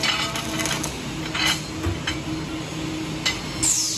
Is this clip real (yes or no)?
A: yes